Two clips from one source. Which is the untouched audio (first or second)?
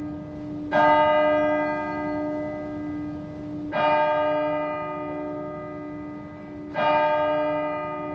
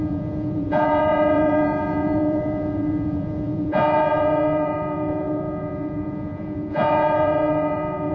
first